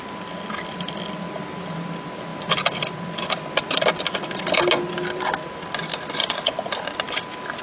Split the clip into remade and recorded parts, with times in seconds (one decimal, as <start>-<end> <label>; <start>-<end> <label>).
0.0-6.2 recorded; 6.2-6.7 remade; 6.7-7.6 recorded